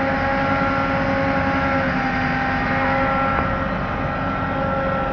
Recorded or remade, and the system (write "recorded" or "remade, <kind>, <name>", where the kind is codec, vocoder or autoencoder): recorded